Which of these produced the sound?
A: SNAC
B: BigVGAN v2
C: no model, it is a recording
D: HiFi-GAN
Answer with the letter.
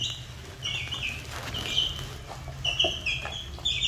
C